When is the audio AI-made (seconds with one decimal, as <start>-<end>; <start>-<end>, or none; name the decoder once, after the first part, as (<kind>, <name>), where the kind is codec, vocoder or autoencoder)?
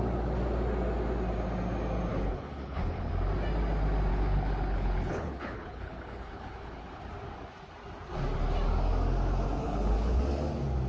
2.1-3.1 (codec, HILCodec); 4.1-7.0; 9.6-10.2